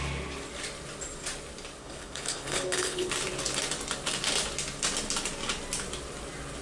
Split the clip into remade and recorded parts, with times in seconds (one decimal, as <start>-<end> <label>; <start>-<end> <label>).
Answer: 0.0-1.8 recorded; 1.8-3.1 remade; 3.1-6.6 recorded